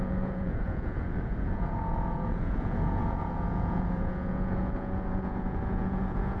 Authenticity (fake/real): fake